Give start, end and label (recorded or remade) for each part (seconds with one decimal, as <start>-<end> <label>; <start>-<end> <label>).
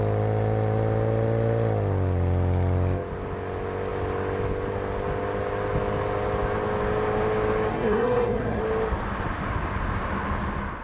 0.0-7.7 recorded; 7.7-8.6 remade; 8.6-10.8 recorded